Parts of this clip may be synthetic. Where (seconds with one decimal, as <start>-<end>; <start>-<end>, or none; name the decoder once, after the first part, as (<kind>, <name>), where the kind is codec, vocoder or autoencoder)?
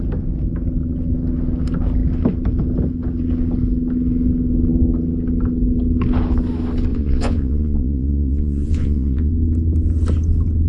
6.9-9.3 (vocoder, Vocos)